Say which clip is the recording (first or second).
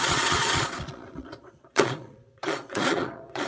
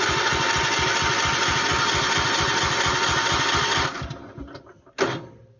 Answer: second